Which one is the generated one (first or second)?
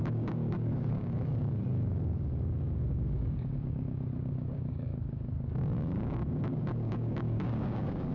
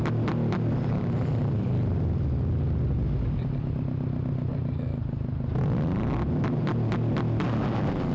first